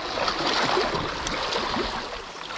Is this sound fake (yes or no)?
no